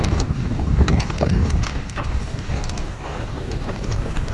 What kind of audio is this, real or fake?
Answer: fake